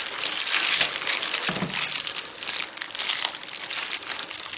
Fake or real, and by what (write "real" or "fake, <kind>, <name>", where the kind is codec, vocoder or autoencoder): real